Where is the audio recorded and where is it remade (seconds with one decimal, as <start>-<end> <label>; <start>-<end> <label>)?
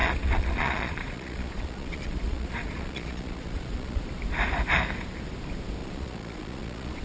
0.0-4.0 remade; 4.0-5.8 recorded; 5.8-7.0 remade